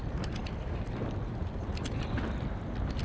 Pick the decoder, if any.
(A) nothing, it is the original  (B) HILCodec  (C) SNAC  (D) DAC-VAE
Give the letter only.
A